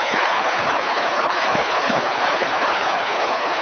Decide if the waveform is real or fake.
fake